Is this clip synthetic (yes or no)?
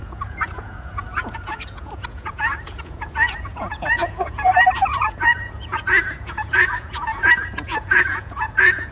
yes